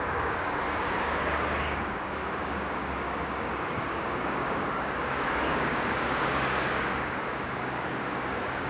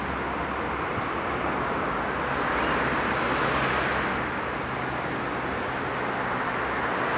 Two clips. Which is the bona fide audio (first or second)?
second